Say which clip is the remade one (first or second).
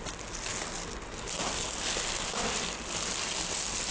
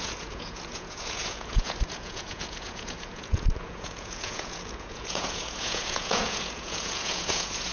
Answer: second